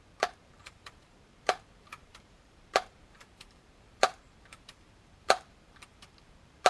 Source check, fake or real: fake